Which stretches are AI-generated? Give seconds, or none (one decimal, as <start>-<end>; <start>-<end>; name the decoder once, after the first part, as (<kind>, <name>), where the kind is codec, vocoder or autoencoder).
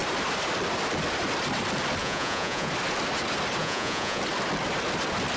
2.0-2.7 (vocoder, Vocos); 3.6-4.2